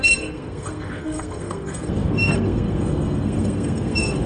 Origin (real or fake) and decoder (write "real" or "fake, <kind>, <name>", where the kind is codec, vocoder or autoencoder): fake, codec, SNAC